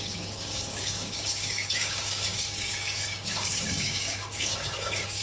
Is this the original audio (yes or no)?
no